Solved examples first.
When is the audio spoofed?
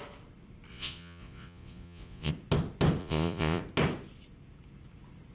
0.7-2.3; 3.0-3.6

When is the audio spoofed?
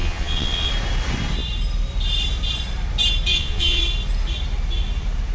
0.0-0.7; 3.3-3.8